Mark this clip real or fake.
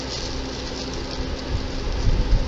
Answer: real